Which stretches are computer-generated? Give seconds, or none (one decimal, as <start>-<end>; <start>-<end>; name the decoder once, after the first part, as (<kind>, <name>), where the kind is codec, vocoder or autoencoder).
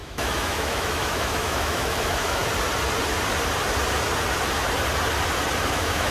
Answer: 0.0-2.4 (autoencoder, DAC-VAE); 5.6-6.1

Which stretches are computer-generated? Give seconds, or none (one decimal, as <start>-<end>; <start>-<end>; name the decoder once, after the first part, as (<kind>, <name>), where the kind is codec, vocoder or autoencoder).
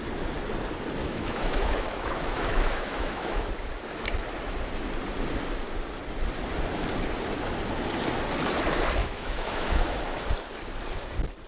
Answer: 1.0-3.5 (autoencoder, DAC-VAE); 9.0-10.2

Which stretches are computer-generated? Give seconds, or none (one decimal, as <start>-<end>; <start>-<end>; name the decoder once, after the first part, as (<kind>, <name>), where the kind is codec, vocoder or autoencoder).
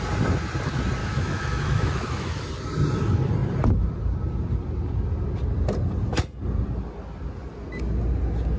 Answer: 1.0-2.5 (autoencoder, DAC-VAE)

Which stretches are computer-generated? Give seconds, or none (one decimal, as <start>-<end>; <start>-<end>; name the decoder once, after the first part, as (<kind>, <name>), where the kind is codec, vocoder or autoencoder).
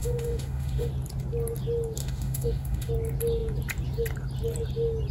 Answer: 0.0-0.9 (autoencoder, DAC-VAE); 2.0-2.9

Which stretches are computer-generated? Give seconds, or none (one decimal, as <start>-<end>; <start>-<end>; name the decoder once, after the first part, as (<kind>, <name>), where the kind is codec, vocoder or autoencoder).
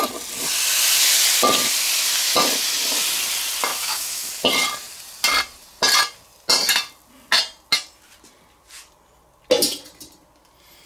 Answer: 3.7-4.3 (autoencoder, DAC-VAE)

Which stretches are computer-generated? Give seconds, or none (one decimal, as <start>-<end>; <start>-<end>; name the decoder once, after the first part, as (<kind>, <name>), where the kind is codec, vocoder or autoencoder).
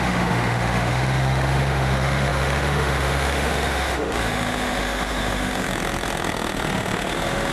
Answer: 0.0-7.5 (autoencoder, DAC-VAE)